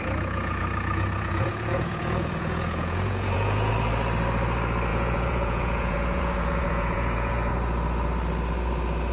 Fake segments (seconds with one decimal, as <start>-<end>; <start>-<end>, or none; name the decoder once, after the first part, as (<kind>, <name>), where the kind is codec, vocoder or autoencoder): 0.0-3.7 (vocoder, Vocos); 4.9-7.5